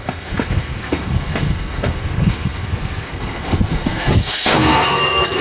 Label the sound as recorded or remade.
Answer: remade